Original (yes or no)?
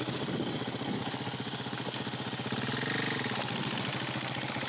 yes